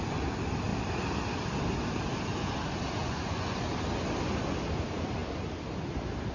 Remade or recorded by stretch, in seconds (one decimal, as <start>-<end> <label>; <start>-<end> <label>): 0.0-3.0 recorded; 3.0-3.6 remade; 3.6-6.3 recorded

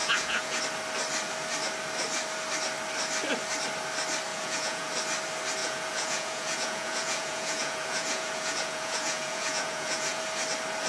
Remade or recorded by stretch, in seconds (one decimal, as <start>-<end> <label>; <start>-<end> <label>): 0.0-0.6 remade; 0.6-4.3 recorded; 4.3-4.9 remade; 4.9-5.6 recorded; 5.6-10.2 remade; 10.2-10.9 recorded

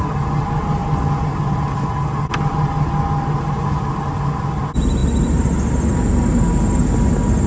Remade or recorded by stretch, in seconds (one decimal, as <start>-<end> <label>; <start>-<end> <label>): 0.0-7.5 recorded

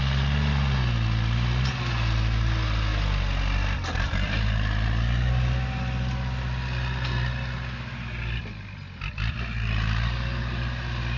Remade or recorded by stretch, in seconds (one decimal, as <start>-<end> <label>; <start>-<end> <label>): 0.0-11.2 recorded

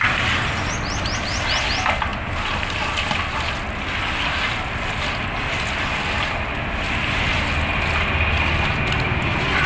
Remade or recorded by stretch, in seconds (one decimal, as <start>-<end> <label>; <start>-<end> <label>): 0.0-9.7 recorded